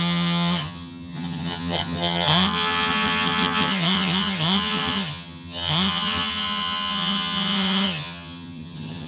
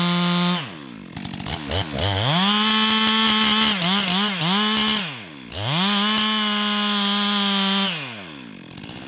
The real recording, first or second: second